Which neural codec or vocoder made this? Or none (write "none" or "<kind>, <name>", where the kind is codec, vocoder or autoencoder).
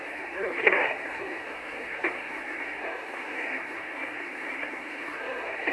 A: codec, SNAC